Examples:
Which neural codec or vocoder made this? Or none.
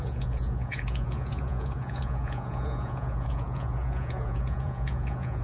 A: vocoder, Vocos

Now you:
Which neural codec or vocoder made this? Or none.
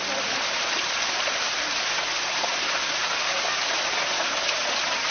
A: none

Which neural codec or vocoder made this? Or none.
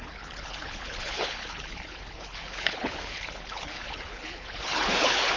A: codec, HILCodec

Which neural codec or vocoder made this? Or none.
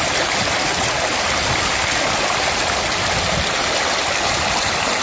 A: none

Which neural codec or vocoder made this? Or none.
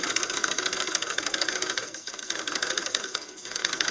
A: codec, SNAC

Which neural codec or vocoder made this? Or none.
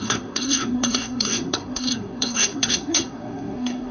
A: codec, SNAC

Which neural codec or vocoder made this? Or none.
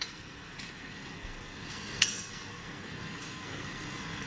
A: codec, SNAC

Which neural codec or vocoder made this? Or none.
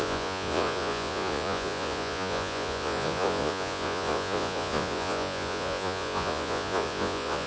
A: vocoder, Vocos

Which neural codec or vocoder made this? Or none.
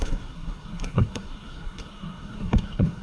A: codec, SNAC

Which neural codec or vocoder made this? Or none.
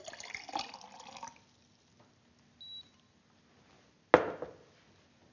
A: none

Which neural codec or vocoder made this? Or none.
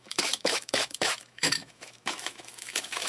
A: autoencoder, DAC-VAE